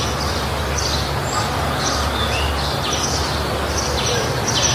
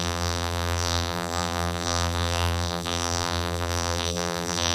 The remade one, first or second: second